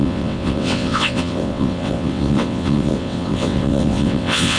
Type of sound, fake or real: fake